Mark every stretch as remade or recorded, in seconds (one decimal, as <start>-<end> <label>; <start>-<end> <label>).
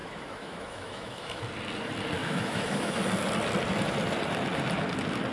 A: 0.0-1.4 remade; 1.4-2.2 recorded; 2.2-3.0 remade; 3.0-5.3 recorded